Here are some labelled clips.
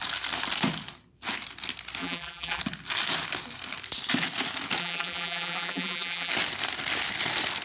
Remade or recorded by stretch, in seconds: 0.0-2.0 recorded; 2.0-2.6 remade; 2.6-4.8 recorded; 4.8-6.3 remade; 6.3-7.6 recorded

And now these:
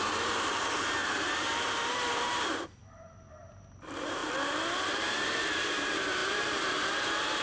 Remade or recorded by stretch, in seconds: 0.0-4.2 remade; 4.2-4.9 recorded; 4.9-7.4 remade

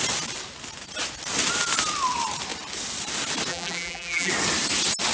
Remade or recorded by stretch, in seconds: 0.0-3.5 recorded; 3.5-4.3 remade; 4.3-5.1 recorded

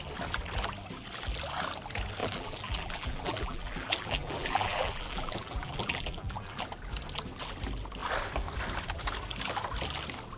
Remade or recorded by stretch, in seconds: 0.0-2.2 recorded; 2.2-6.6 remade; 6.6-10.4 recorded

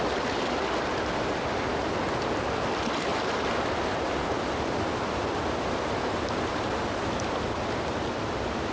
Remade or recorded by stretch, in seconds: 0.0-8.7 recorded

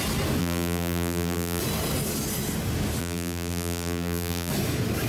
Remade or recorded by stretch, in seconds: 0.0-0.4 recorded; 0.4-1.6 remade; 1.6-3.0 recorded; 3.0-4.5 remade; 4.5-5.1 recorded

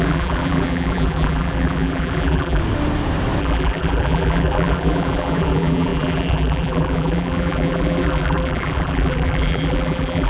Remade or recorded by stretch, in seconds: 0.0-2.6 remade; 2.6-3.4 recorded; 3.4-10.3 remade